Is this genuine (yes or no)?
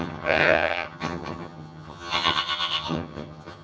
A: no